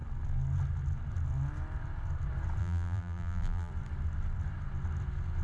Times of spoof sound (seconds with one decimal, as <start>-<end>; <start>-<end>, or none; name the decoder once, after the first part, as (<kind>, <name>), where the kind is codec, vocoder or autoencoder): 2.6-3.7 (vocoder, BigVGAN v2)